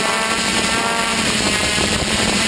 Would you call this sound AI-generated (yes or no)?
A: no